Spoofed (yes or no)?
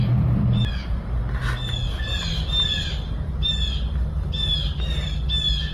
no